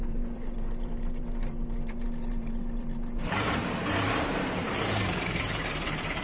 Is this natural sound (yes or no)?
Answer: no